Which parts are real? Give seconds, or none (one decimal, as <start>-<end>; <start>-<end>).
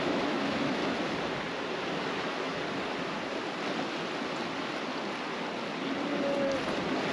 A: 0.8-2.1; 2.5-7.1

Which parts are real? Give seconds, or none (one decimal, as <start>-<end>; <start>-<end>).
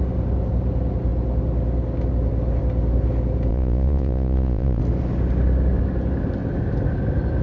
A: 0.0-3.5; 4.8-7.4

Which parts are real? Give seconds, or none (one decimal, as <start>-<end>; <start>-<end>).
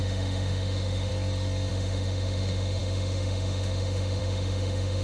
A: 1.1-1.7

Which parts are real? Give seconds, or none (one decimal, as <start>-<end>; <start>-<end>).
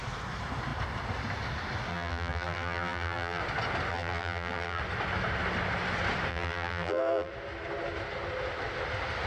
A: 0.0-1.9; 3.4-3.9; 4.8-6.3; 7.3-9.3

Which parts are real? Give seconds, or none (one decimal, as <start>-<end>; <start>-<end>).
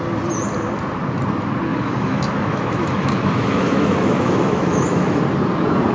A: 0.0-1.7; 5.2-5.9